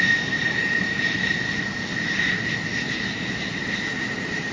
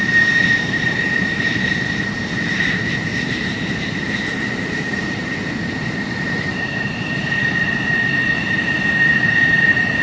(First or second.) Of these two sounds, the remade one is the second